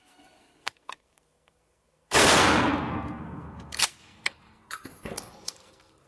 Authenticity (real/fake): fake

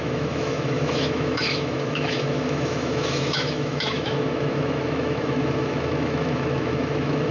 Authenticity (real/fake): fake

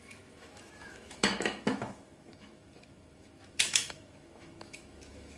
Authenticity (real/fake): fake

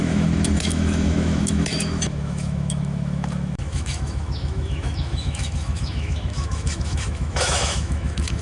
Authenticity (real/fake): fake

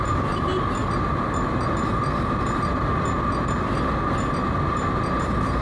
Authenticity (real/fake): real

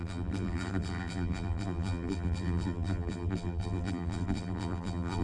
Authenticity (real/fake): fake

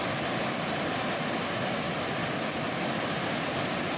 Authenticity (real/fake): real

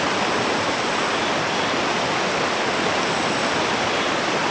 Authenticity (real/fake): real